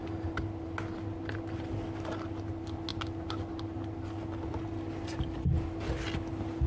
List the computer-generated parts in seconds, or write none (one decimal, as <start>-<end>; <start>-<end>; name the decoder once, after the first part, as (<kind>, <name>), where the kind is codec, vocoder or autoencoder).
none